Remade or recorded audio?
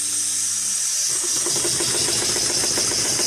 remade